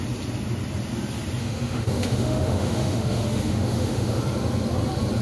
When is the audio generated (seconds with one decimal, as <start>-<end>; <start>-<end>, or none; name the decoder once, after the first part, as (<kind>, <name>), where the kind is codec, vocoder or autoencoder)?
1.4-4.2 (autoencoder, DAC-VAE)